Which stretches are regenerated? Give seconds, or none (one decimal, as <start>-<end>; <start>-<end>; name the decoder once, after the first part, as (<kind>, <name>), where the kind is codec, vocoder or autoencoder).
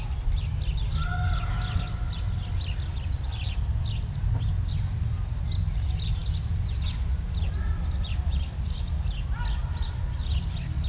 none